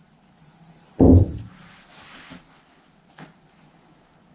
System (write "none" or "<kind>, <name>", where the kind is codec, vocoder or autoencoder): none